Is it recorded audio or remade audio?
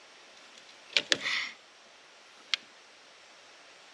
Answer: recorded